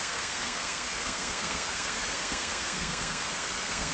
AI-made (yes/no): yes